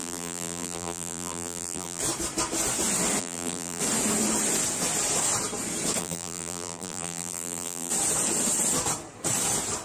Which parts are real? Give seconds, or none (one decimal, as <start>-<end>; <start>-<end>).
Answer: 2.0-3.2; 3.8-6.0; 7.9-9.8